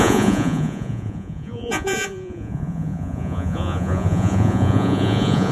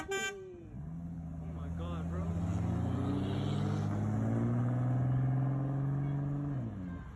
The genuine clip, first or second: second